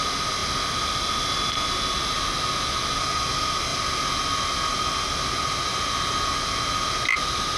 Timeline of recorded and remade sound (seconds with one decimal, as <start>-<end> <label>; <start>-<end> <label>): 0.0-7.6 recorded